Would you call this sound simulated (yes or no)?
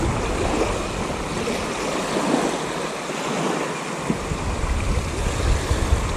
no